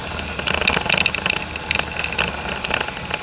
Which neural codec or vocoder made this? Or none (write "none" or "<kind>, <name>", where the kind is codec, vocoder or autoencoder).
none